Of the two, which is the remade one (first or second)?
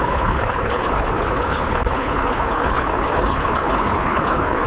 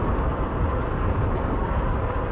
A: first